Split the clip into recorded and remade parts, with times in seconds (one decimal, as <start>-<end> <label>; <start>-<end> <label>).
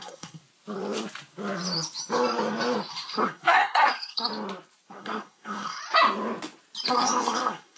0.0-0.4 remade; 0.4-2.9 recorded; 2.9-4.3 remade; 4.3-4.9 recorded; 4.9-5.8 remade; 5.8-6.9 recorded; 6.9-7.8 remade